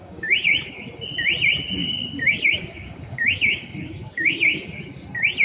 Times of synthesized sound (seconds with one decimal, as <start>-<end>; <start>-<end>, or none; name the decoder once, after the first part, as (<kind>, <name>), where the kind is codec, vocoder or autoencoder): 0.0-0.7 (codec, DAC); 1.8-4.7